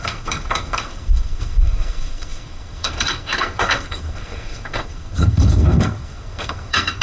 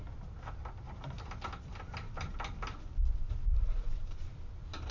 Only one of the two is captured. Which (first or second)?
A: second